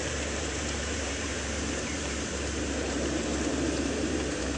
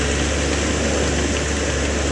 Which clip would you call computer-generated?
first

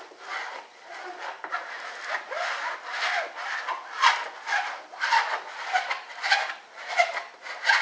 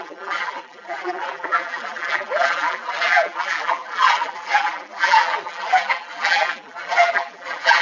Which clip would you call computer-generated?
second